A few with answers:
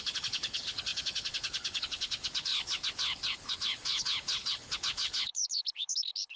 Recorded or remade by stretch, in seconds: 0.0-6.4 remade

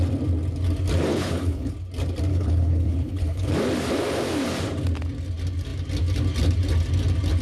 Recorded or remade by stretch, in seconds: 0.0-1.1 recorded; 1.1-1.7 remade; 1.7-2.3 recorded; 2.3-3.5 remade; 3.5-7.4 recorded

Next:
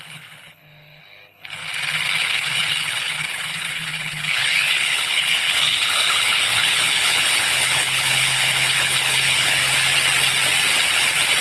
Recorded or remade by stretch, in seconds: 0.0-1.6 remade; 1.6-2.2 recorded; 2.2-9.6 remade; 9.6-11.4 recorded